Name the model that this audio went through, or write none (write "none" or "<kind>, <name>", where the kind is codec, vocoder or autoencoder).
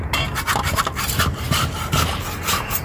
none